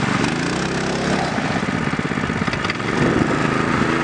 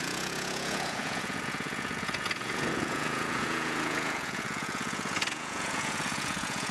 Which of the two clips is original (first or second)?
first